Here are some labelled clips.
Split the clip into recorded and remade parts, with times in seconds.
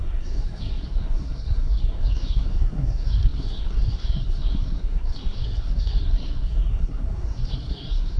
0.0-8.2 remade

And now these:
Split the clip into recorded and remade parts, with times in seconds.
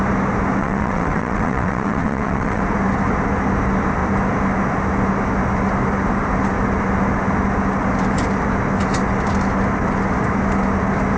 0.0-0.6 recorded; 0.6-2.6 remade; 2.6-11.2 recorded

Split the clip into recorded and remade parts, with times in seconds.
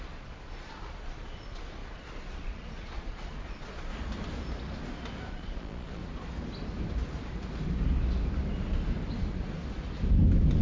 0.0-3.9 remade; 3.9-5.3 recorded; 5.3-6.0 remade; 6.0-10.6 recorded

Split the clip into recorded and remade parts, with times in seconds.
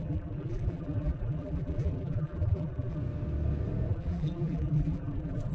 0.0-3.0 remade; 3.0-3.9 recorded; 3.9-5.5 remade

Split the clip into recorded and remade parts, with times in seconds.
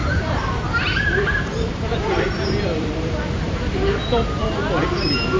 0.0-3.1 remade; 3.1-5.4 recorded